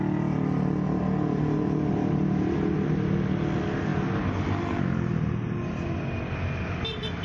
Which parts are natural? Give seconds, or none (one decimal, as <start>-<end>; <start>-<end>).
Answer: 0.0-7.2